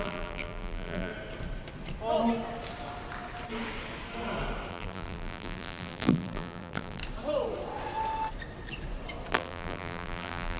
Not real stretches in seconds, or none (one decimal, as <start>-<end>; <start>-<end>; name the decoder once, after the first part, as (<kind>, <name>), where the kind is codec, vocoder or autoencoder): 0.0-1.1 (vocoder, BigVGAN v2); 4.7-7.0; 9.3-10.6